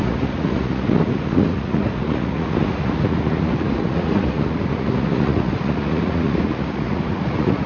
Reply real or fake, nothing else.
fake